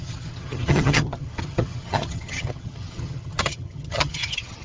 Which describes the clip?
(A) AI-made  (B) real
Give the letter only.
A